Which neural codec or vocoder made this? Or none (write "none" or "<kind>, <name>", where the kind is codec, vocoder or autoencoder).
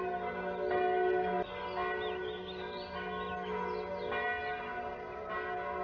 none